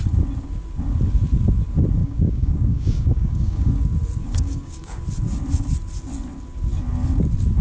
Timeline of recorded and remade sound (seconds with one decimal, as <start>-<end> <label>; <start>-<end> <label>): 0.0-2.0 recorded; 2.0-3.7 remade; 3.7-4.2 recorded; 4.2-5.0 remade; 5.0-7.6 recorded

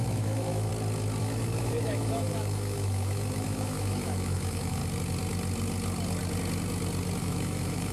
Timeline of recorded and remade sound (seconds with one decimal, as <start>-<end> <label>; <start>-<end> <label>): 0.0-0.7 remade; 0.7-1.2 recorded; 1.2-4.8 remade; 4.8-7.2 recorded; 7.2-7.9 remade

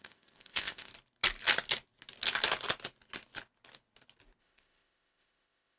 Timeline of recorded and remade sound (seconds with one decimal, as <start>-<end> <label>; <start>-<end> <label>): 0.0-0.9 remade; 0.9-4.4 recorded; 4.4-5.8 remade

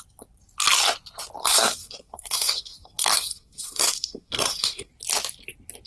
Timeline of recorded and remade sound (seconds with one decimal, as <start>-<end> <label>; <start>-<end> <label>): 0.0-1.4 recorded; 1.4-4.9 remade; 4.9-5.9 recorded